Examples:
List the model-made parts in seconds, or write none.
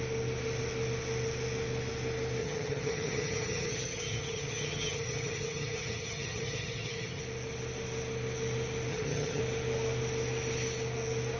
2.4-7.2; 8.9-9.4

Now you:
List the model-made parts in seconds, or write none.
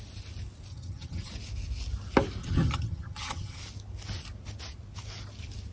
0.7-1.3; 2.4-3.6